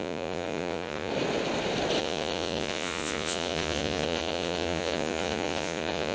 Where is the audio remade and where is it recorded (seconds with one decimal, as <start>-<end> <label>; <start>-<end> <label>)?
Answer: 0.0-1.1 remade; 1.1-2.0 recorded; 2.0-6.1 remade